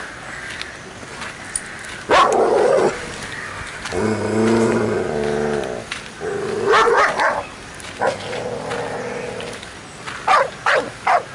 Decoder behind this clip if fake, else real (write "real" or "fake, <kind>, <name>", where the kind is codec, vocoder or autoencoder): real